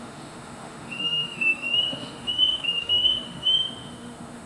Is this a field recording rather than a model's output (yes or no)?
no